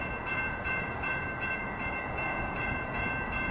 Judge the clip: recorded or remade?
remade